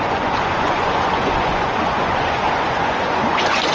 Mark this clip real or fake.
fake